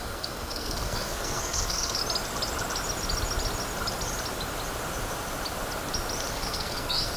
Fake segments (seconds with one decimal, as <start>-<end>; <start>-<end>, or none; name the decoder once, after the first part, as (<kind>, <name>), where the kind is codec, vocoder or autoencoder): 0.0-2.0 (codec, SNAC); 6.3-7.2